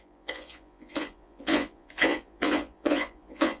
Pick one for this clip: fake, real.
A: fake